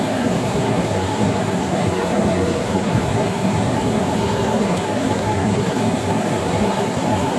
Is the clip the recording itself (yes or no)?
no